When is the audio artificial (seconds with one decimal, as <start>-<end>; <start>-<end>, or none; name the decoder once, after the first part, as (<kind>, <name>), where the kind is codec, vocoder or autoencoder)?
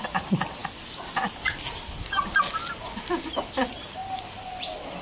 none